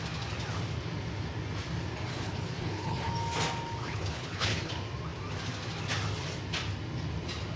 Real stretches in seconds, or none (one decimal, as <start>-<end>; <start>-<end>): 0.0-2.1; 3.1-3.8; 4.7-7.6